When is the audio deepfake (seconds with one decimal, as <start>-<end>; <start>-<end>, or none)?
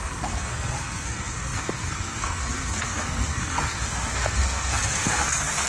0.0-5.7